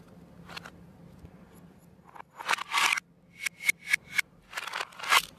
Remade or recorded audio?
recorded